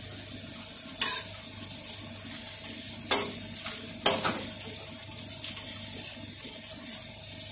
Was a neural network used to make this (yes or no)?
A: no